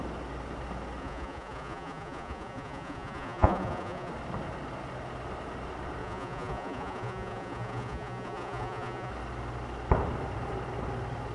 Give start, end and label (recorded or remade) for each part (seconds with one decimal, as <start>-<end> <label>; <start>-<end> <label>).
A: 0.0-1.0 recorded; 1.0-4.1 remade; 4.1-6.0 recorded; 6.0-9.1 remade; 9.1-11.3 recorded